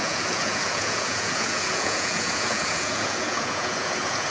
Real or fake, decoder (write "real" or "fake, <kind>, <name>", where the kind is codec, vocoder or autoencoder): fake, vocoder, Vocos